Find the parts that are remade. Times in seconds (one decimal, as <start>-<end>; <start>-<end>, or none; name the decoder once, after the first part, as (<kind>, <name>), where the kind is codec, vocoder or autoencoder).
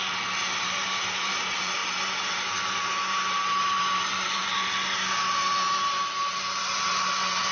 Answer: 0.0-7.5 (vocoder, BigVGAN v2)